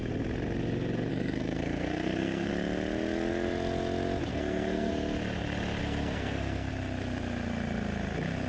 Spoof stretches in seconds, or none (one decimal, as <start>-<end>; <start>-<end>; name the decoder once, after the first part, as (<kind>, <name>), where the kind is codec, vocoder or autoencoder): 1.1-2.5 (codec, SNAC); 4.3-4.9; 5.8-6.7